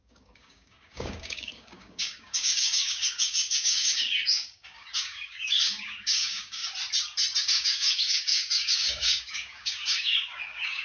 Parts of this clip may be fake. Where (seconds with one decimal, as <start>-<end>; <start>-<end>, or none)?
0.0-6.6; 7.4-10.8